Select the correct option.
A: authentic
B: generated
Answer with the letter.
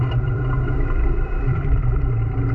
B